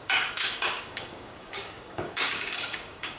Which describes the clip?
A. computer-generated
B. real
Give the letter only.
A